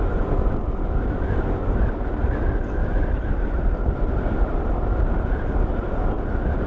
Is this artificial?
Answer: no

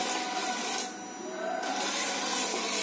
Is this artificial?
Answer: no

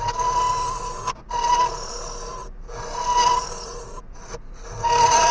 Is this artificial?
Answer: no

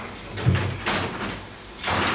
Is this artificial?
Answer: no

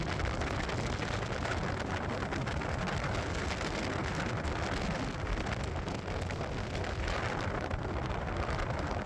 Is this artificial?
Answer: no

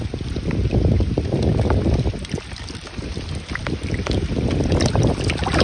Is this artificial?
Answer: no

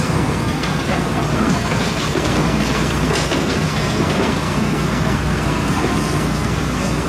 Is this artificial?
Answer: yes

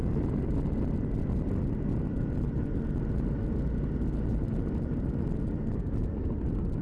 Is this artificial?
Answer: no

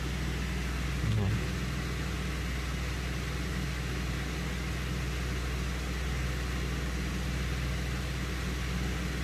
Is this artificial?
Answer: no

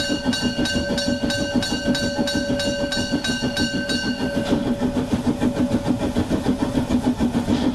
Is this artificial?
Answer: no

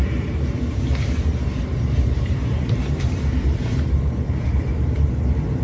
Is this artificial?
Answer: yes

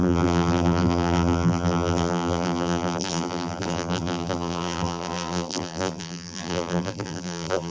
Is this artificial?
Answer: yes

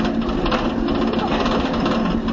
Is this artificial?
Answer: no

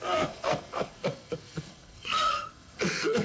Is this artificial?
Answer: yes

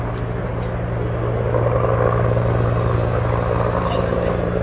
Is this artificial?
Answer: no